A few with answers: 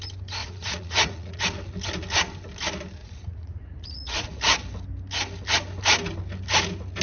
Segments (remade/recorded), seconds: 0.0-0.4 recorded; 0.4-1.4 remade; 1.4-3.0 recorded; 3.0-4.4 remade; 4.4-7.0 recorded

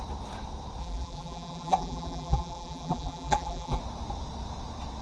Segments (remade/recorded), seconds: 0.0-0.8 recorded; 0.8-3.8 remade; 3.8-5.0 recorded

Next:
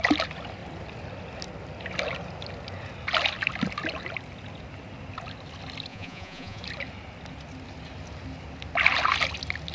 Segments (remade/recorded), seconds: 0.0-5.9 recorded; 5.9-6.6 remade; 6.6-9.7 recorded